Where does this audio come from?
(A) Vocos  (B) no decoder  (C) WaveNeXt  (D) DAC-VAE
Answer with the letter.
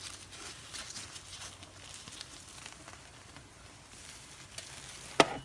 B